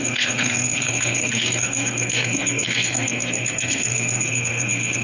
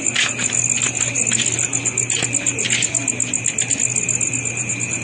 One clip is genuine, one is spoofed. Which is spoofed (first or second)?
first